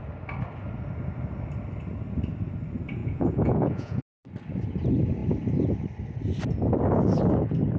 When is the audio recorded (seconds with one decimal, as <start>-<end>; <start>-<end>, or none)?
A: 0.0-3.0; 4.0-7.8